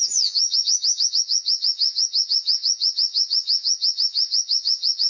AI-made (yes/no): yes